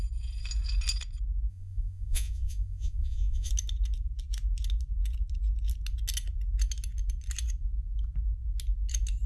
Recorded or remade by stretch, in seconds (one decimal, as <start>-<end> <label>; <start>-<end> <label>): 0.0-1.5 recorded; 1.5-3.5 remade; 3.5-9.3 recorded